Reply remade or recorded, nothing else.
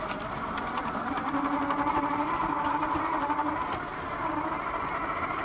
recorded